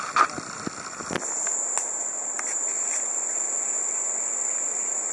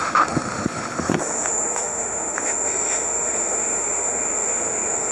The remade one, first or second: second